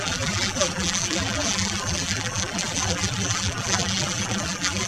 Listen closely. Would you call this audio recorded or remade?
remade